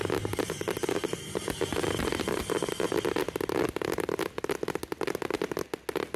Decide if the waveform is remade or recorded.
recorded